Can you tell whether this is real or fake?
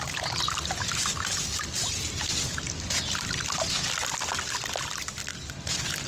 real